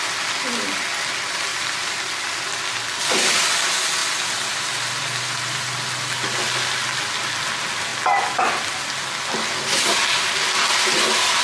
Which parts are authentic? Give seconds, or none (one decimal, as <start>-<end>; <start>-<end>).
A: 0.0-1.5; 2.3-11.4